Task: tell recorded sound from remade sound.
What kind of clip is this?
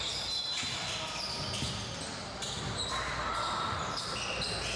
recorded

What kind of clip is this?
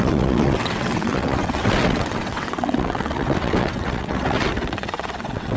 remade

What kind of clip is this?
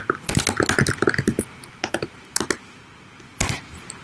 recorded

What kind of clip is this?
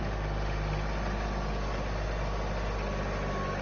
recorded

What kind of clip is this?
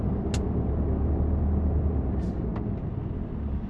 recorded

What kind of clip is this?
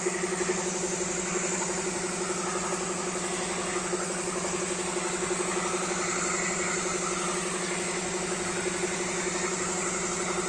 recorded